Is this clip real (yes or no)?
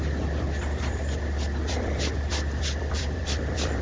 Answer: no